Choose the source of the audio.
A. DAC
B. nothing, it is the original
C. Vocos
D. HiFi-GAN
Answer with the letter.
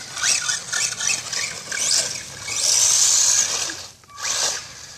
B